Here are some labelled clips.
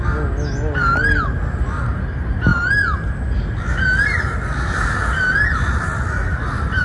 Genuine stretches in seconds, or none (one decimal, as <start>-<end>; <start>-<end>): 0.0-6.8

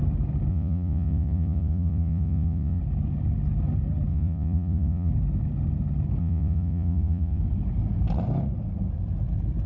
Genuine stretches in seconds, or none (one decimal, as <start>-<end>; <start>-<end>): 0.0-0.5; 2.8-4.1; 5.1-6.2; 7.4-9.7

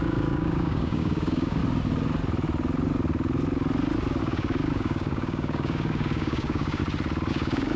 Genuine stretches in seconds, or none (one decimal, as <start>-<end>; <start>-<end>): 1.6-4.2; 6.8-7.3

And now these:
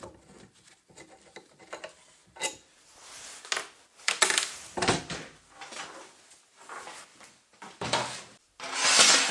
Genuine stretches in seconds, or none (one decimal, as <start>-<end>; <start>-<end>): 0.0-7.1; 8.4-9.3

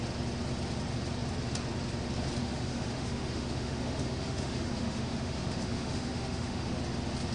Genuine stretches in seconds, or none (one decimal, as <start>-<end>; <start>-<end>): 0.0-2.4; 6.8-7.3

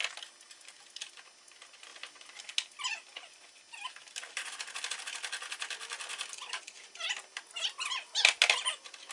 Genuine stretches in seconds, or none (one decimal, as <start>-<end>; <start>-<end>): 0.0-9.1